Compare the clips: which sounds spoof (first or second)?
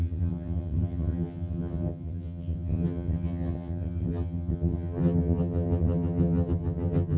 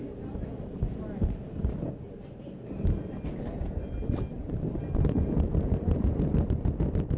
first